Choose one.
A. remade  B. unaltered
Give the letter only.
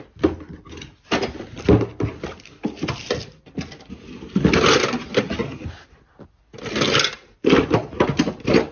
B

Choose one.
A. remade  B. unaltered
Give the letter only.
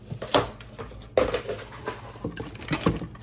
B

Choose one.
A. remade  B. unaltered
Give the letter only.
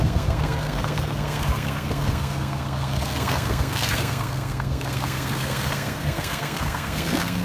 A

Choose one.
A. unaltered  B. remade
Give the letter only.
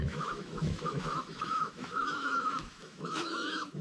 B